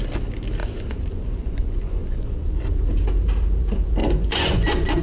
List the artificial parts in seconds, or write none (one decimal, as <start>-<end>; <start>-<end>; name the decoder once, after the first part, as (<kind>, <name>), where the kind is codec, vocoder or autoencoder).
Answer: 0.6-2.6 (vocoder, Vocos); 4.0-5.0